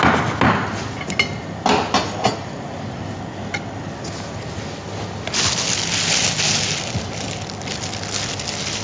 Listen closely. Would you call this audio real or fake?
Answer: real